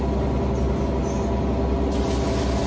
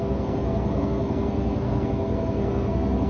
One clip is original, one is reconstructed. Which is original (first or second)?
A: first